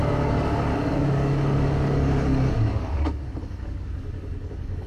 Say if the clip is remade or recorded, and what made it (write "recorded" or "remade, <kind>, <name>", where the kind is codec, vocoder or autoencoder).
remade, codec, DAC